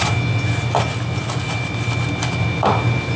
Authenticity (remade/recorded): recorded